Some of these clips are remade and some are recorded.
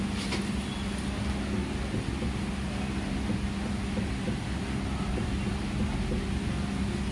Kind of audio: recorded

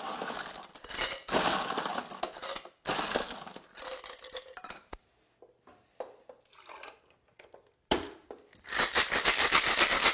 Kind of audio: recorded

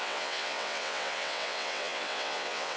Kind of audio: remade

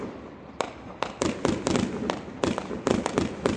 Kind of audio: recorded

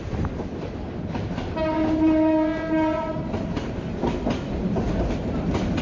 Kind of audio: recorded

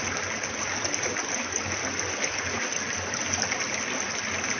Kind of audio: recorded